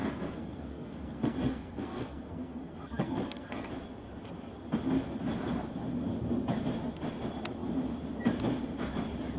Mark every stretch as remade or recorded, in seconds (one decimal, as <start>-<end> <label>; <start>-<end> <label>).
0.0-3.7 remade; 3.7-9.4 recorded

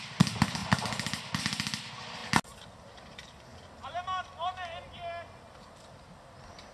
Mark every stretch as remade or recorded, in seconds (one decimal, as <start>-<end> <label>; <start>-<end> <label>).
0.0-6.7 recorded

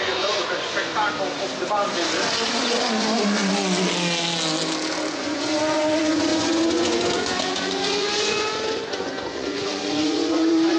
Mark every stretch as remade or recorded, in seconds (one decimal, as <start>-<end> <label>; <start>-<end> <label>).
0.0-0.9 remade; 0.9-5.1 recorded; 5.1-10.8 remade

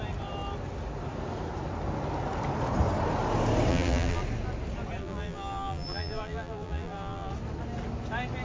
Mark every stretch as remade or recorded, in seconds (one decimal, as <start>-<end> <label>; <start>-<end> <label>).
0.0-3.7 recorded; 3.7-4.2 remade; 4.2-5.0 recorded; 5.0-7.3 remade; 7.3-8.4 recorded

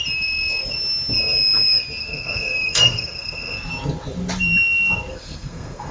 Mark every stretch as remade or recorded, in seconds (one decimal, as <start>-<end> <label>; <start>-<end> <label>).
0.0-2.0 recorded; 2.0-3.7 remade; 3.7-5.1 recorded; 5.1-5.9 remade

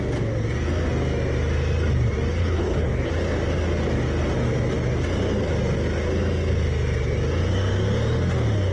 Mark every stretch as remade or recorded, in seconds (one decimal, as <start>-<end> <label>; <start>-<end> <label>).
0.0-2.4 recorded; 2.4-3.1 remade; 3.1-8.7 recorded

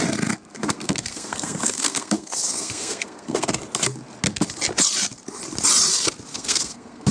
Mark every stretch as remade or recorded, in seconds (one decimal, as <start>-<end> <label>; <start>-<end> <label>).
0.0-0.5 recorded; 0.5-3.5 remade; 3.5-6.3 recorded; 6.3-7.1 remade